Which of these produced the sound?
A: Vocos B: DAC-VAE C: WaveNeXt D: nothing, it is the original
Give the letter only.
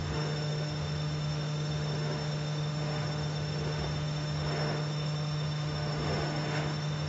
B